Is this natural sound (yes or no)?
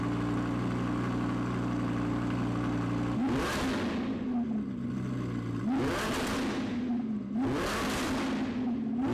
yes